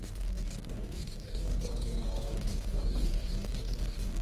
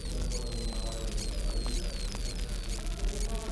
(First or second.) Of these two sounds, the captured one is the second